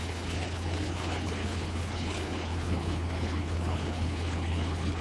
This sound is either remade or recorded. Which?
remade